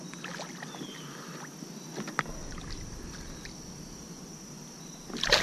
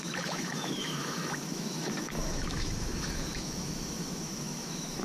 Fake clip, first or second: second